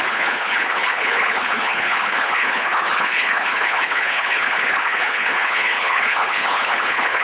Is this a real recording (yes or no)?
no